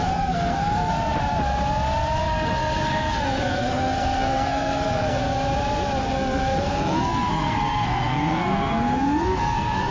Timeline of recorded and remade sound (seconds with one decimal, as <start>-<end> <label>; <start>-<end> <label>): 0.0-0.9 remade; 0.9-2.2 recorded; 2.2-5.2 remade; 5.2-6.0 recorded; 6.0-9.9 remade